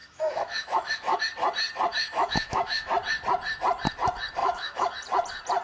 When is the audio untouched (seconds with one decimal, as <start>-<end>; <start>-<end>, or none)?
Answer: 1.2-1.9; 2.9-4.4; 4.9-5.6